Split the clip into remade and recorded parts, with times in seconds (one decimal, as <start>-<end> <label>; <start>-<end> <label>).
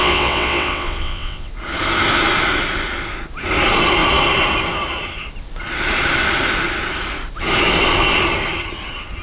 0.0-1.5 remade; 1.5-9.2 recorded